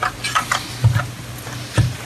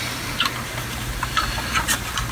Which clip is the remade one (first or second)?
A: second